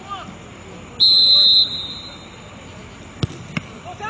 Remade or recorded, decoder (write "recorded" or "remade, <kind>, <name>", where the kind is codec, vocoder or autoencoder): recorded